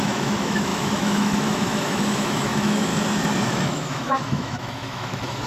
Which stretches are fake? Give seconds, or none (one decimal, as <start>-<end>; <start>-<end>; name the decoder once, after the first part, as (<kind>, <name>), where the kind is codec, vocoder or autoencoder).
0.0-2.9 (autoencoder, DAC-VAE); 3.5-5.5